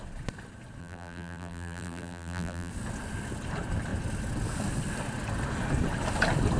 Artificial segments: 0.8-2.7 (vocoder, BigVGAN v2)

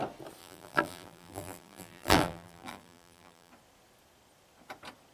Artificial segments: 0.4-3.5 (vocoder, BigVGAN v2)

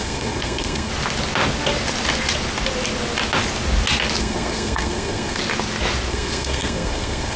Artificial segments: 0.0-0.9 (codec, SNAC); 4.2-5.4; 6.1-7.4

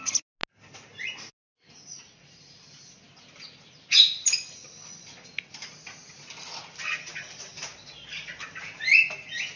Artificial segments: none

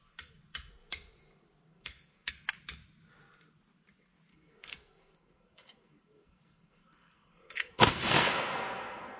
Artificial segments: 1.7-2.3 (codec, SNAC); 4.3-9.2

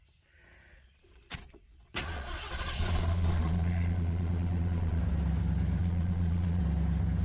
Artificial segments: 0.7-5.0 (vocoder, Vocos); 5.8-6.6

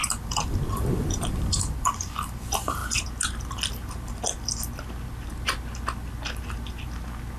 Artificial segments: 0.0-2.8 (vocoder, BigVGAN v2)